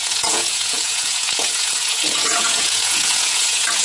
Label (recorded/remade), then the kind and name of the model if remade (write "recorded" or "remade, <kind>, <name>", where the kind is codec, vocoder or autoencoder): remade, vocoder, Vocos